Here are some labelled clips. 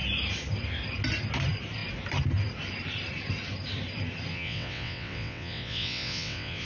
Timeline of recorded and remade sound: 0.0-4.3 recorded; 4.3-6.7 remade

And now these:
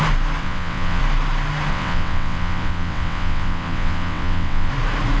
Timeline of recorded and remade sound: 0.0-0.4 recorded; 0.4-1.0 remade; 1.0-1.7 recorded; 1.7-4.7 remade; 4.7-5.2 recorded

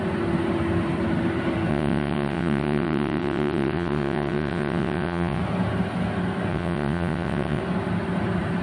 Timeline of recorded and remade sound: 0.0-1.7 recorded; 1.7-5.4 remade; 5.4-6.5 recorded; 6.5-7.6 remade; 7.6-8.6 recorded

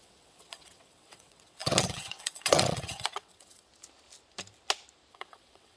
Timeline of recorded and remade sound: 0.0-3.7 remade; 3.7-5.1 recorded; 5.1-5.8 remade